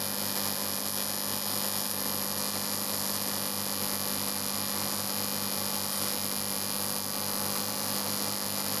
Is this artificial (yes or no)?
no